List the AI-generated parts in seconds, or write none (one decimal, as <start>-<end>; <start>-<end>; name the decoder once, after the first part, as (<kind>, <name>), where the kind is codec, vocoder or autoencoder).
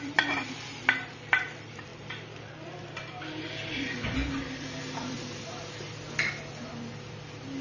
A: 0.0-4.2 (vocoder, BigVGAN v2)